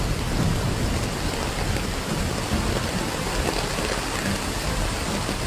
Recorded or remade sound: recorded